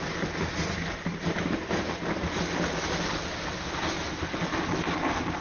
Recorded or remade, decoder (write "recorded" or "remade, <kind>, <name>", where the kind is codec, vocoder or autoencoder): recorded